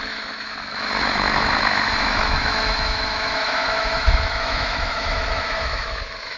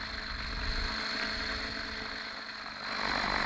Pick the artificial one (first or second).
first